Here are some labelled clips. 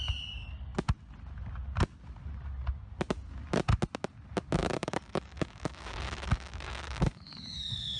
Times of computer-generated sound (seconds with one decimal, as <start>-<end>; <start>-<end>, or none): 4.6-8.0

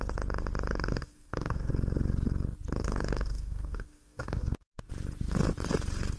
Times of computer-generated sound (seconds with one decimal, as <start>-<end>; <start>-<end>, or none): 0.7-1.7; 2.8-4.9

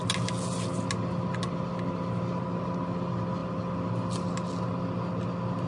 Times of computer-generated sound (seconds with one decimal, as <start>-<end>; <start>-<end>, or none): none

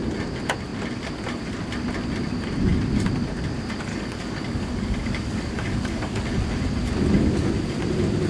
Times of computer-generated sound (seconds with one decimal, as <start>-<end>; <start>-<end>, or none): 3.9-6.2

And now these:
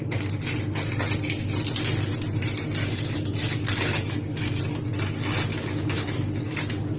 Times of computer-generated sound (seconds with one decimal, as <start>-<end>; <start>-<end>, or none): 2.8-4.6; 5.5-7.0

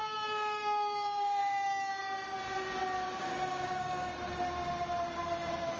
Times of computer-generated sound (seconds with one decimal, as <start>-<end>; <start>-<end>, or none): 0.0-2.0; 3.2-4.1

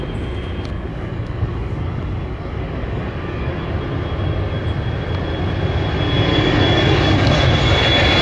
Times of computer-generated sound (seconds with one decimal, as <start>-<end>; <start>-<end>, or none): 0.9-3.8; 6.3-7.4